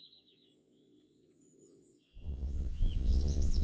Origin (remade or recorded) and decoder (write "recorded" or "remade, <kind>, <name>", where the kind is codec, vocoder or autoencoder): remade, vocoder, Vocos